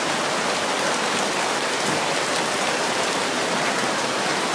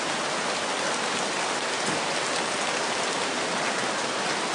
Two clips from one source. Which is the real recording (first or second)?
second